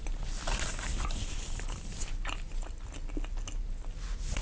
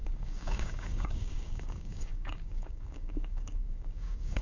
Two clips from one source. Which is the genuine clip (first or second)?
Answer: first